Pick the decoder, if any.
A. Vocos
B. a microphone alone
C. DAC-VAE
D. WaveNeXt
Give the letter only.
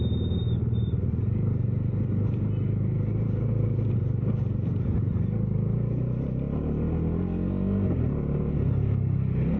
B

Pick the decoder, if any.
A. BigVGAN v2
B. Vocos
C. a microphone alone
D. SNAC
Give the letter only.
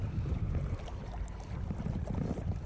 C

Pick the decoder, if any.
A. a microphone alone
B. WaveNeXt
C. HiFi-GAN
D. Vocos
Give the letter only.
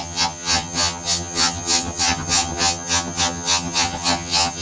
C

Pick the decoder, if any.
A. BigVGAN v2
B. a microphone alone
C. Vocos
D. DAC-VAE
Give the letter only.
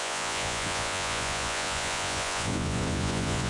C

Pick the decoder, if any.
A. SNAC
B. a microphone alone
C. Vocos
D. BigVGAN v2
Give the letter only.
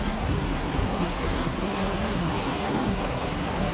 A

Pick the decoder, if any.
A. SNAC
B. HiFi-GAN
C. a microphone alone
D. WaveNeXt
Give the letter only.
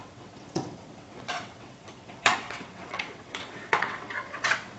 D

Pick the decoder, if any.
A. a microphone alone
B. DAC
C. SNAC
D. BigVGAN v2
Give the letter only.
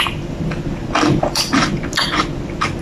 D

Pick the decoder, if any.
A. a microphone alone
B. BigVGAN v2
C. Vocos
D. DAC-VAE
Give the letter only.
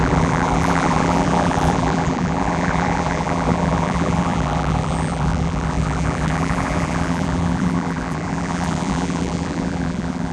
B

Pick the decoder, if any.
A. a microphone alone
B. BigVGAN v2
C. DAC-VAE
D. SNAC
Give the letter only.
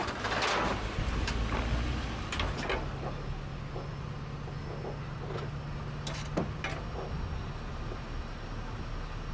A